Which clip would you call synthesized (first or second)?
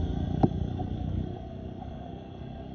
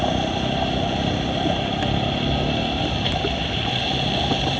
first